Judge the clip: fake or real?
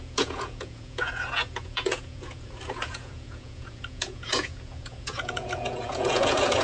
fake